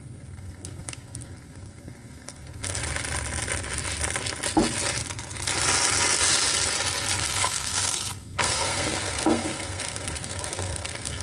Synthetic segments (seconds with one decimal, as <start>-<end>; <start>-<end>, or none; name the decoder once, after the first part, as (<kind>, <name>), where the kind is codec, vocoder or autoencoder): 0.0-2.8 (codec, SNAC); 7.2-11.2